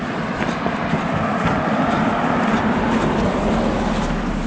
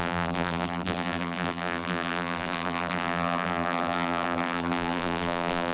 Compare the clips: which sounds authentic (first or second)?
first